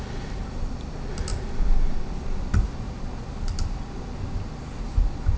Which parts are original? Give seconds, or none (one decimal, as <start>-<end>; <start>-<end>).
0.0-5.4